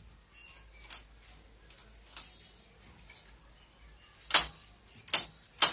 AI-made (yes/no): no